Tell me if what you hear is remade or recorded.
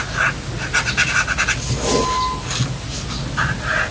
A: recorded